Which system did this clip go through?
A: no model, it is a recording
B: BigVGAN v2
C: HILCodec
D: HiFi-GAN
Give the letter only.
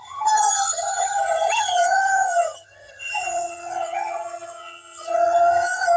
D